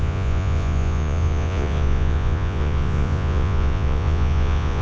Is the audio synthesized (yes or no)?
yes